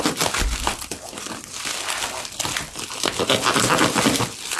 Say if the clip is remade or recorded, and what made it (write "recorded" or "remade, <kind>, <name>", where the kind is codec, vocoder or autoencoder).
recorded